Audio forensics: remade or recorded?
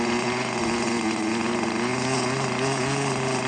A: recorded